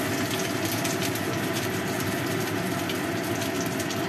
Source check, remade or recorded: recorded